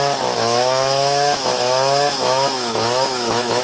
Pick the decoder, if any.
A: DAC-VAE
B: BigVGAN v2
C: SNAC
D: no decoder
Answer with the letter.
A